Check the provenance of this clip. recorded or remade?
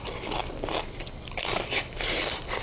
recorded